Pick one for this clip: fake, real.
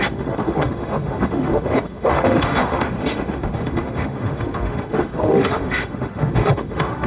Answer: fake